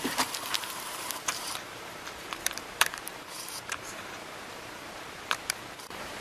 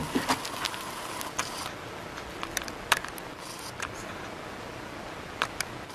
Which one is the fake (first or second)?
first